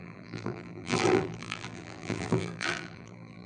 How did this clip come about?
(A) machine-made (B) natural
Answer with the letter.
A